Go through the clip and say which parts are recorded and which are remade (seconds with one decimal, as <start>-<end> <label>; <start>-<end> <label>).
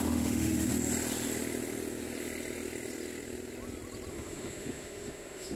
0.0-0.7 remade; 0.7-4.1 recorded; 4.1-5.6 remade